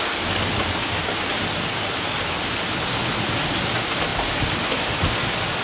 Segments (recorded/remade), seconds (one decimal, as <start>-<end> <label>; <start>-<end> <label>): 0.0-5.6 recorded